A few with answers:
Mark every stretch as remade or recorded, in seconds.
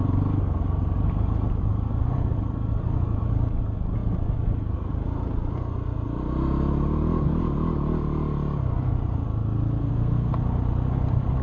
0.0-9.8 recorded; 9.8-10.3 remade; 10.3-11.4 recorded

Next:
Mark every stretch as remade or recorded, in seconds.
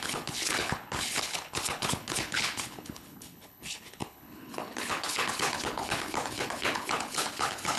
0.0-7.8 remade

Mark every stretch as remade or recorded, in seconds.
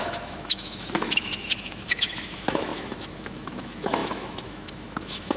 0.0-5.4 remade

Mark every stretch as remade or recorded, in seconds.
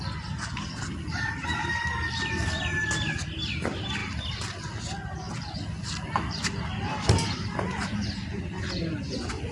0.0-4.0 remade; 4.0-5.3 recorded; 5.3-7.9 remade; 7.9-8.5 recorded; 8.5-9.5 remade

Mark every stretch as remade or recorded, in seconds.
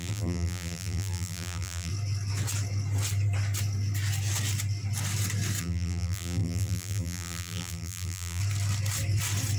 0.0-1.9 remade; 1.9-5.6 recorded; 5.6-8.4 remade; 8.4-9.6 recorded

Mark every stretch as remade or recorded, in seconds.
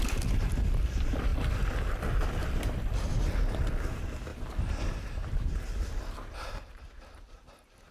0.0-2.4 recorded; 2.4-3.1 remade; 3.1-4.3 recorded; 4.3-7.5 remade; 7.5-7.9 recorded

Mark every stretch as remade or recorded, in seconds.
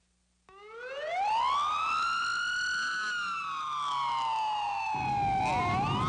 0.0-6.1 recorded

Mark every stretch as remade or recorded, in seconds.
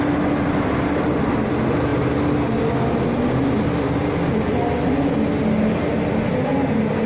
0.0-7.1 recorded